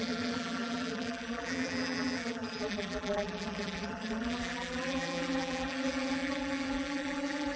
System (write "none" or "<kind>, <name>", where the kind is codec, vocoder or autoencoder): vocoder, BigVGAN v2